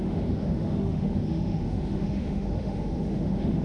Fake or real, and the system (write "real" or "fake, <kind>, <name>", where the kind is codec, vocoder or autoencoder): fake, autoencoder, DAC-VAE